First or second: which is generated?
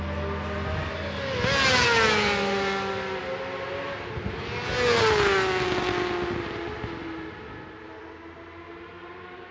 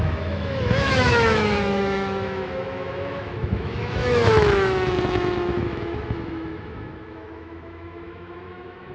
second